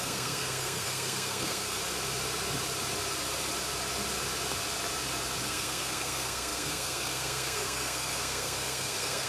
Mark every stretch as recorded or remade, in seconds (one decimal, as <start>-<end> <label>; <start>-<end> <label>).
0.0-1.8 remade; 1.8-5.5 recorded; 5.5-9.3 remade